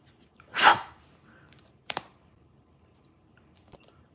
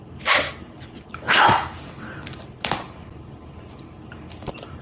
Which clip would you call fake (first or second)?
first